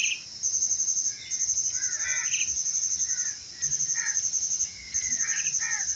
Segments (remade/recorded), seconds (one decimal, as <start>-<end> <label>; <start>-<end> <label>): 0.0-5.9 recorded